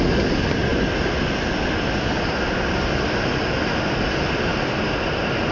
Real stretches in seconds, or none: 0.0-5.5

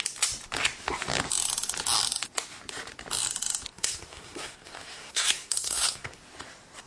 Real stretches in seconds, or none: 0.0-3.7; 6.2-6.9

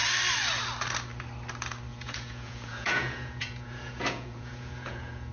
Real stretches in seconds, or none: 0.0-1.9

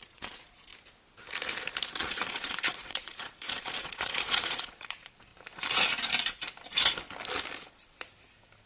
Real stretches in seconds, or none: 0.7-2.0; 5.3-8.7

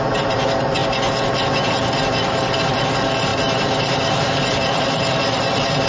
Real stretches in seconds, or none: 0.8-1.7

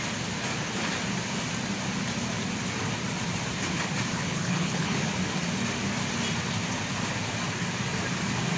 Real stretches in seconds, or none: 0.0-4.1; 5.1-8.6

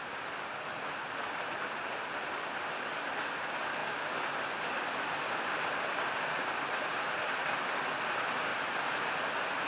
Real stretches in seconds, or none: 0.0-9.7

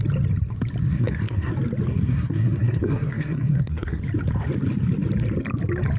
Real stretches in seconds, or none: 0.0-0.9; 1.5-1.9; 4.0-6.0